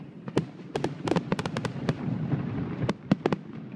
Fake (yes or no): no